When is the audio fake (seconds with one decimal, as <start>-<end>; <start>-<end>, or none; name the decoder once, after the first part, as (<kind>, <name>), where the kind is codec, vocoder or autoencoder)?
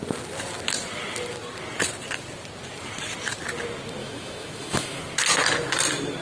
4.0-5.0 (autoencoder, DAC-VAE)